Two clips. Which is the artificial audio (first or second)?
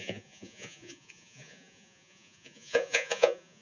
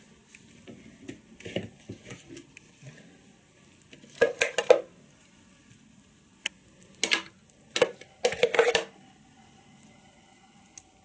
first